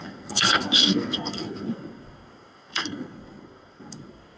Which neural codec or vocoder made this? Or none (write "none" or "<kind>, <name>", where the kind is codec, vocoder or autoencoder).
codec, SNAC